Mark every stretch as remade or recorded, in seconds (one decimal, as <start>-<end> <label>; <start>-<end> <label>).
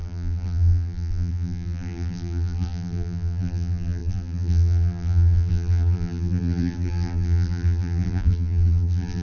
0.0-9.2 remade